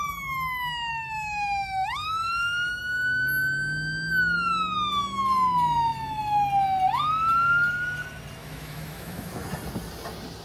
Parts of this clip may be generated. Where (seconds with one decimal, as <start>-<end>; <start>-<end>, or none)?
0.9-2.7; 8.4-9.3